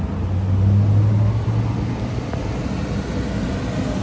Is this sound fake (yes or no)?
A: no